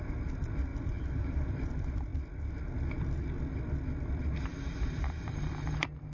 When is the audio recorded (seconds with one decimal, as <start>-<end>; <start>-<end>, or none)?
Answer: 0.0-0.7; 1.7-4.5; 5.5-6.1